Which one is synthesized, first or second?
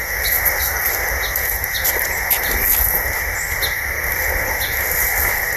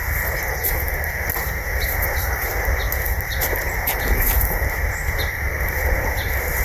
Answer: second